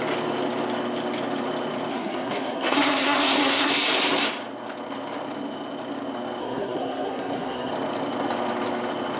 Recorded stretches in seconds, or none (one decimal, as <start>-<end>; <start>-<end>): 0.0-1.9; 3.7-6.4; 7.7-9.2